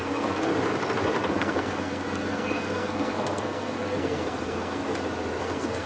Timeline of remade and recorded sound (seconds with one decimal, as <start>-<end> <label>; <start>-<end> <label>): 0.0-0.5 remade; 0.5-1.3 recorded; 1.3-4.8 remade; 4.8-5.4 recorded; 5.4-5.9 remade